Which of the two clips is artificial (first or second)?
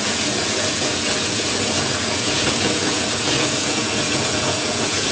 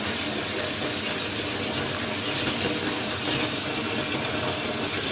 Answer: first